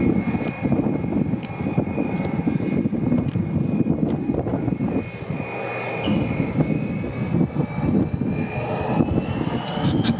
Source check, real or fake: real